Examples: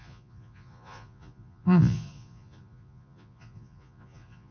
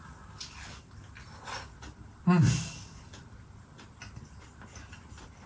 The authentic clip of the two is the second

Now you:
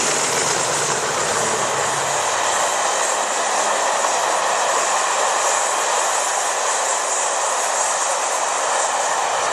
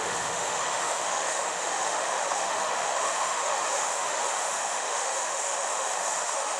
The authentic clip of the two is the first